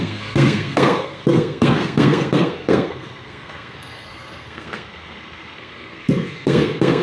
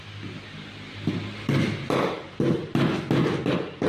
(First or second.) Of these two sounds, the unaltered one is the second